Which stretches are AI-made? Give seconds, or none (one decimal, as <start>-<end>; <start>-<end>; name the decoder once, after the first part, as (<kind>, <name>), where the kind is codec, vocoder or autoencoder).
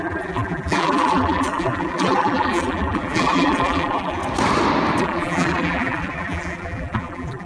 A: 0.0-4.2 (vocoder, BigVGAN v2); 5.0-7.5